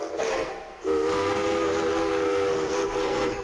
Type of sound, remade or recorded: remade